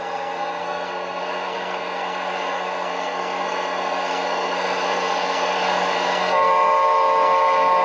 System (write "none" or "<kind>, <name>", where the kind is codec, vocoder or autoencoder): codec, SNAC